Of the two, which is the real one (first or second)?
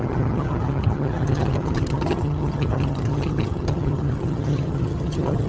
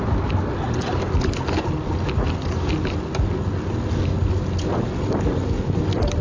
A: second